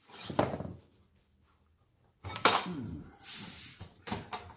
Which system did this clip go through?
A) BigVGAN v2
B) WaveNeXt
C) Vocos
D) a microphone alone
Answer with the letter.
D